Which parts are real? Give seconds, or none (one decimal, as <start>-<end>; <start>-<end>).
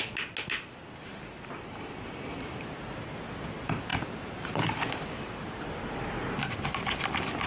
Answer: 0.0-3.9; 4.6-7.5